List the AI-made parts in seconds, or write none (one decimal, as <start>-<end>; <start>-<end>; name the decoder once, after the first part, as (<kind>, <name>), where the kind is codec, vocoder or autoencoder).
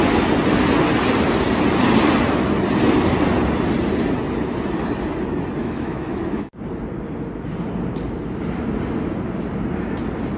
5.6-6.5 (autoencoder, DAC-VAE)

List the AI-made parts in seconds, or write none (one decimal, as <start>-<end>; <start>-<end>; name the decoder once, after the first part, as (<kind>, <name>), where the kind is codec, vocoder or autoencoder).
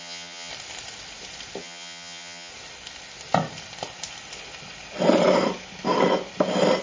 0.0-0.5 (vocoder, HiFi-GAN); 1.6-2.5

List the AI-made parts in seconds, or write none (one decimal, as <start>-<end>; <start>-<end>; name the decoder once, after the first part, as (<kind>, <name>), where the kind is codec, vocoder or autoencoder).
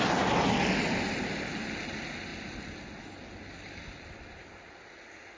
none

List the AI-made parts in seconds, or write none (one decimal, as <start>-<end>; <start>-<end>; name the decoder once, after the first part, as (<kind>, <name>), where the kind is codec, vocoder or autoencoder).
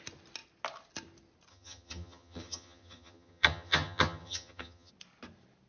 1.5-4.9 (vocoder, HiFi-GAN)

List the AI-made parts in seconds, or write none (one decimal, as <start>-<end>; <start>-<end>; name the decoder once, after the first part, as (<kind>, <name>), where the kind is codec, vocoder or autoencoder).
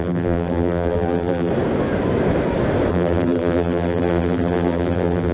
0.0-1.5 (vocoder, BigVGAN v2); 2.9-5.3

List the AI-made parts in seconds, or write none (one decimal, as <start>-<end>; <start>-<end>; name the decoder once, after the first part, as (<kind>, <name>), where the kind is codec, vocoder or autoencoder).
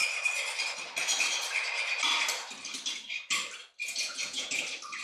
3.8-4.5 (vocoder, Vocos)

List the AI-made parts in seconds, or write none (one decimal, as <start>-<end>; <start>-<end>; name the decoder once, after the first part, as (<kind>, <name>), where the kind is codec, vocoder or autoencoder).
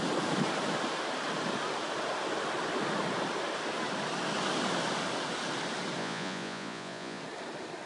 6.0-7.2 (vocoder, Vocos)